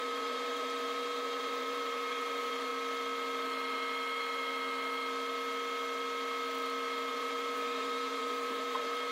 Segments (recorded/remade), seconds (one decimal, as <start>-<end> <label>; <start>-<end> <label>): 0.0-2.7 remade; 2.7-7.1 recorded; 7.1-9.1 remade